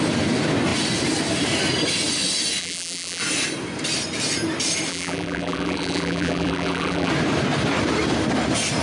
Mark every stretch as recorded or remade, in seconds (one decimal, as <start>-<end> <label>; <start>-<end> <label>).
0.0-2.6 recorded; 2.6-3.2 remade; 3.2-4.9 recorded; 4.9-7.1 remade; 7.1-8.8 recorded